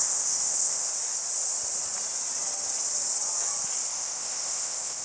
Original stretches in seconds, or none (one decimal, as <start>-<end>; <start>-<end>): 0.9-3.9